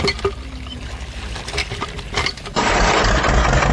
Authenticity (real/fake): real